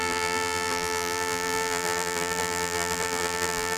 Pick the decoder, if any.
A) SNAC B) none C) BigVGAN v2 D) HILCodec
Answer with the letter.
C